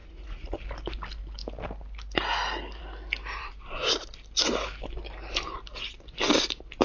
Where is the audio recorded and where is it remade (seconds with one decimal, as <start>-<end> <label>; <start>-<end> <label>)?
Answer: 0.0-0.6 remade; 0.6-6.8 recorded